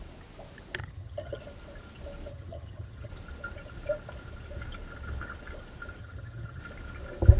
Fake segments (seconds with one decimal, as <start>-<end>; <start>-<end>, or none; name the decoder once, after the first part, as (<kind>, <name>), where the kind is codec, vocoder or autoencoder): 0.8-1.4 (vocoder, HiFi-GAN); 2.3-3.1; 6.0-6.6